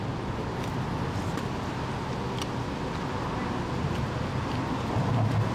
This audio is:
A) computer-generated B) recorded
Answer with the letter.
B